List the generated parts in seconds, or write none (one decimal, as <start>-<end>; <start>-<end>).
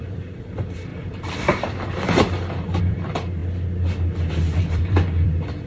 0.0-3.4; 4.6-5.7